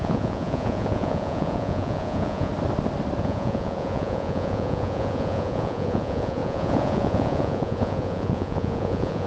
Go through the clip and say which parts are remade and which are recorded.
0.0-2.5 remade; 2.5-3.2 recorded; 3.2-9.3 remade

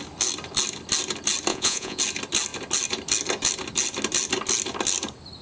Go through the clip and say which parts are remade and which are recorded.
0.0-1.5 recorded; 1.5-2.0 remade; 2.0-5.4 recorded

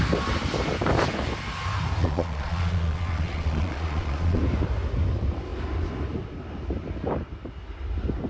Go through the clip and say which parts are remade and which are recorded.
0.0-2.0 recorded; 2.0-4.4 remade; 4.4-8.3 recorded

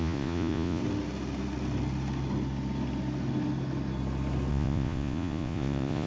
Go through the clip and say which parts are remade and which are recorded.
0.0-0.8 remade; 0.8-4.5 recorded; 4.5-6.1 remade

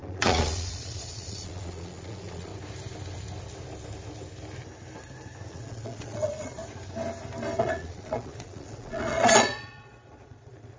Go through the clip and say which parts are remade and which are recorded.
0.0-2.5 remade; 2.5-5.5 recorded; 5.5-6.6 remade; 6.6-7.6 recorded; 7.6-10.8 remade

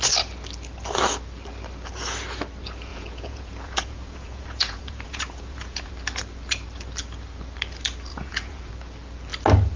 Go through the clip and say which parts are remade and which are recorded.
0.0-2.9 recorded; 2.9-5.9 remade; 5.9-8.1 recorded; 8.1-8.7 remade; 8.7-9.8 recorded

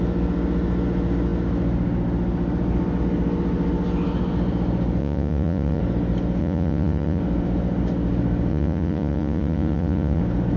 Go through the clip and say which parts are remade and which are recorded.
0.0-5.0 recorded; 5.0-5.8 remade; 5.8-6.4 recorded; 6.4-7.2 remade; 7.2-8.5 recorded; 8.5-10.2 remade; 10.2-10.6 recorded